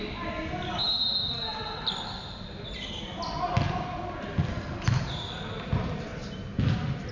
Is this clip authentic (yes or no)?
yes